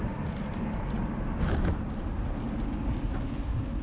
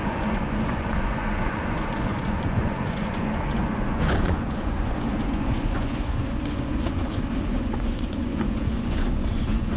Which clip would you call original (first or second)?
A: first